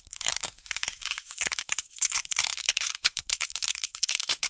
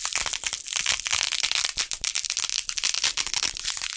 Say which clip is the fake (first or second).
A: first